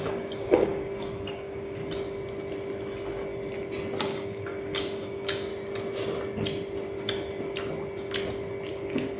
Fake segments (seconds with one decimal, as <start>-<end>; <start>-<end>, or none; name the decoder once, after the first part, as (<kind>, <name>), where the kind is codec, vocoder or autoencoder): 0.0-1.8 (codec, DAC); 4.0-5.5; 8.7-9.2